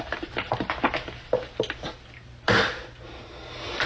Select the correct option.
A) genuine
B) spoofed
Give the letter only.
A